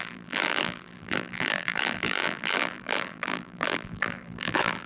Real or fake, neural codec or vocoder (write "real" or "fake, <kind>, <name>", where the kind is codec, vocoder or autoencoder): fake, vocoder, BigVGAN v2